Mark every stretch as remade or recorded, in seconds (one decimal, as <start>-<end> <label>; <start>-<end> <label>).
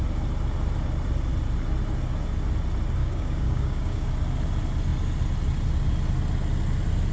0.0-3.0 recorded; 3.0-4.1 remade; 4.1-7.1 recorded